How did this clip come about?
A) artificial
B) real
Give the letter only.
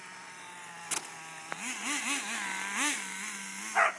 B